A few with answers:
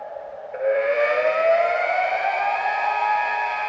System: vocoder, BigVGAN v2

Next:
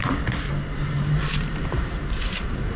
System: vocoder, BigVGAN v2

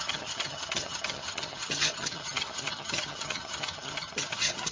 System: vocoder, HiFi-GAN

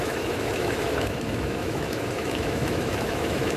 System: autoencoder, DAC-VAE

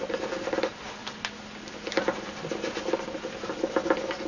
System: none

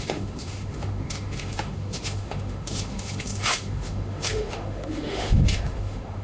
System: autoencoder, DAC-VAE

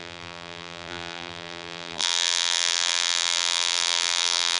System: vocoder, BigVGAN v2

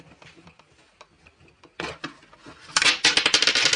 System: none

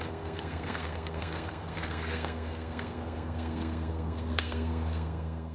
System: codec, SNAC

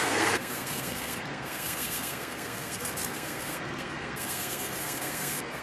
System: codec, SNAC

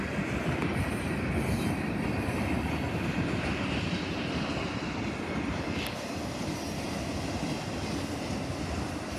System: none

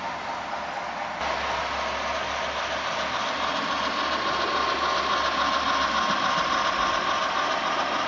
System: none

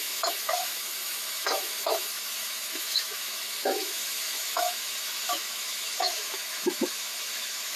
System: autoencoder, DAC-VAE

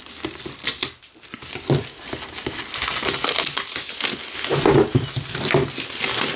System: none